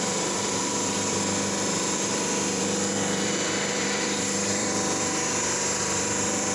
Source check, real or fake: fake